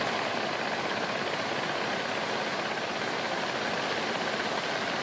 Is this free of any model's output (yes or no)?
yes